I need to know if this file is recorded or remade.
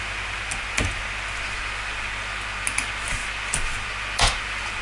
recorded